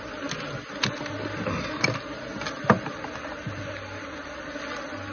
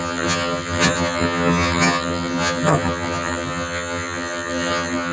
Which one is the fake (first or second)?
second